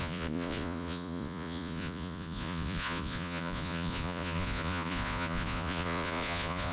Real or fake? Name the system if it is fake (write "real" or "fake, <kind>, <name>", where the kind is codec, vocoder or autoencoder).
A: fake, vocoder, Vocos